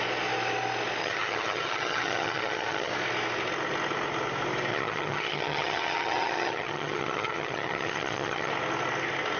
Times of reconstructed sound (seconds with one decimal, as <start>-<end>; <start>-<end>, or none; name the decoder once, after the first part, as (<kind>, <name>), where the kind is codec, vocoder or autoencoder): 1.0-2.9 (vocoder, HiFi-GAN); 4.7-8.5